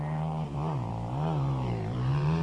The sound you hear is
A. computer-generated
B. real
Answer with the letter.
A